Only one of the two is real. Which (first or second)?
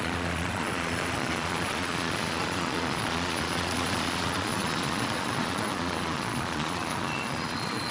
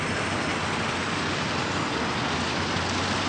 second